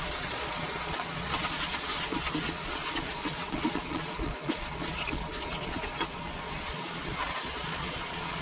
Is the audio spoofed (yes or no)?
yes